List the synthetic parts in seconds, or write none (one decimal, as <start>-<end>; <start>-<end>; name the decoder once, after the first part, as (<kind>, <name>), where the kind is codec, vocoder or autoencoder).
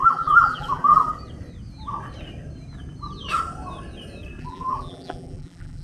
0.0-1.1 (vocoder, BigVGAN v2); 4.4-5.8